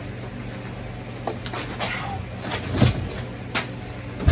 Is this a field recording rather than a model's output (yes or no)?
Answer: yes